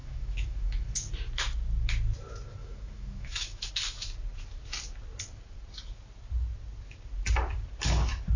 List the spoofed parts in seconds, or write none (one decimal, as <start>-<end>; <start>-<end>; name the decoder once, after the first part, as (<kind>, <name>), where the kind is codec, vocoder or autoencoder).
0.0-1.1 (autoencoder, DAC-VAE); 2.6-3.7